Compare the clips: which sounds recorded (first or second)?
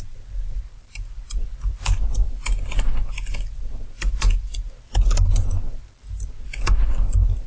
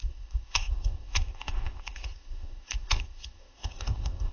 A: first